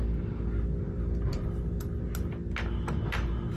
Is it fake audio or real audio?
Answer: real